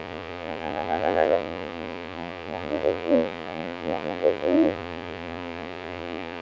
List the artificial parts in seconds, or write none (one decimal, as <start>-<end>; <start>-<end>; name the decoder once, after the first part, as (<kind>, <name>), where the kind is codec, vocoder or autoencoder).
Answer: 0.0-6.4 (vocoder, Vocos)